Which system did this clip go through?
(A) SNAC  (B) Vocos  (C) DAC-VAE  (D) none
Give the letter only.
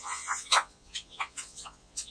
B